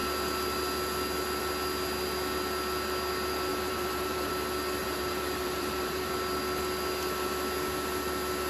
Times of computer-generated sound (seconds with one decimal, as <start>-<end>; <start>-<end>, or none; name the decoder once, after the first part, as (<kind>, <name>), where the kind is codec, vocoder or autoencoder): 3.5-4.3 (vocoder, BigVGAN v2); 4.8-6.1